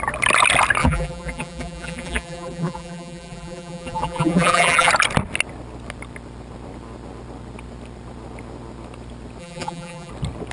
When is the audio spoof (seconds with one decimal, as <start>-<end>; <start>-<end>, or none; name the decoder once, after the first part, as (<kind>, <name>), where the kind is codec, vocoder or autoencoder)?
0.8-4.9 (vocoder, BigVGAN v2); 9.4-10.1